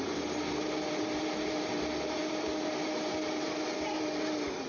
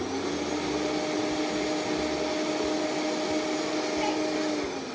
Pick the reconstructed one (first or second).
first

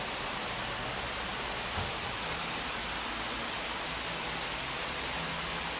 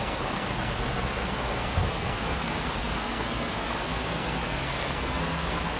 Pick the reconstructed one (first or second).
second